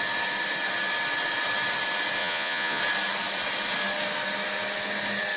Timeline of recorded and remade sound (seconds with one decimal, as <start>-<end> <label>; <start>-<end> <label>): 0.0-2.2 recorded; 2.2-2.8 remade; 2.8-5.4 recorded